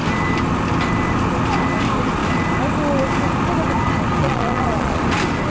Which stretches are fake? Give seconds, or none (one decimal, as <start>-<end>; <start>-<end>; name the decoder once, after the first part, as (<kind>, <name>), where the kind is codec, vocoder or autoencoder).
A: 4.2-5.0 (vocoder, Vocos)